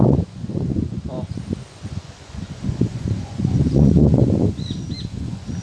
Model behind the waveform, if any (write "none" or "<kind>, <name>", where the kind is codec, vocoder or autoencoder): vocoder, Vocos